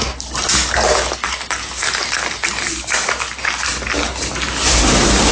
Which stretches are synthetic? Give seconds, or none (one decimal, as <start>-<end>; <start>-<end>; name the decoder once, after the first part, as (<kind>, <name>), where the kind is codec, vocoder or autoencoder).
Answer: none